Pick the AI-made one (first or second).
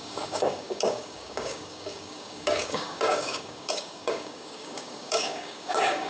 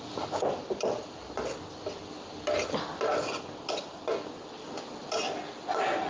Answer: first